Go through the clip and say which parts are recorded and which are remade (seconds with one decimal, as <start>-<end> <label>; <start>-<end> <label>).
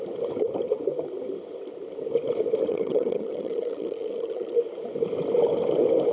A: 0.0-2.7 recorded; 2.7-4.6 remade; 4.6-6.1 recorded